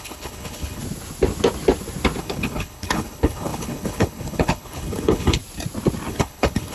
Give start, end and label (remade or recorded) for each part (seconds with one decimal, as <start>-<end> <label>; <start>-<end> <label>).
0.0-0.8 remade; 0.8-2.2 recorded; 2.2-5.4 remade; 5.4-6.1 recorded; 6.1-6.7 remade